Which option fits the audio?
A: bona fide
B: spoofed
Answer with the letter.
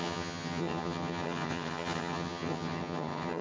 B